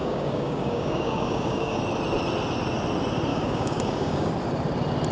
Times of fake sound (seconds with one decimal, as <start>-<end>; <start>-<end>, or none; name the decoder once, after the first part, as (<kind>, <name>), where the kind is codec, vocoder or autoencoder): 0.0-1.8 (codec, DAC); 3.3-4.3